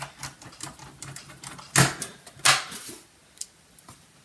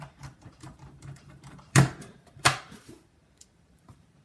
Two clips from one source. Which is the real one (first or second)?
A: first